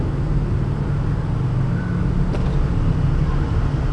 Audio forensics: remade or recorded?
recorded